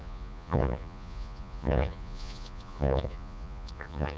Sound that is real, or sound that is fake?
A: fake